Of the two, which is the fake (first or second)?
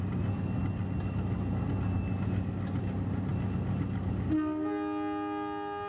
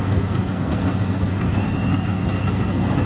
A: second